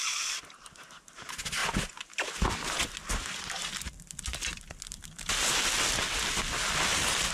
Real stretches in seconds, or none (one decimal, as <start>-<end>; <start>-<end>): 0.0-7.3